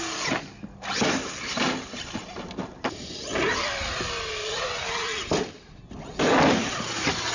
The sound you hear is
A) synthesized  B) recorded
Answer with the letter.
B